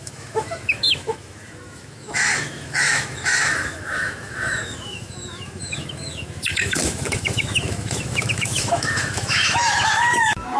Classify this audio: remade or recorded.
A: remade